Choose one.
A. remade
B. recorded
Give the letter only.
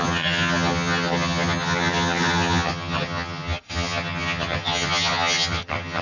A